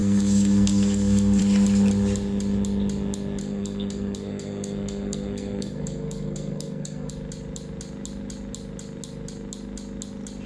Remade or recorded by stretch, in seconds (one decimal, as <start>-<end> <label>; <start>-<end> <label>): 0.0-1.4 remade; 1.4-3.4 recorded; 3.4-7.1 remade; 7.1-10.5 recorded